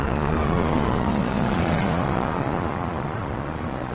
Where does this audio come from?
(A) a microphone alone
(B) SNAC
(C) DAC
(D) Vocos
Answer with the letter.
D